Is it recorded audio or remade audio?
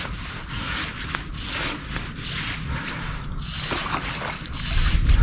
recorded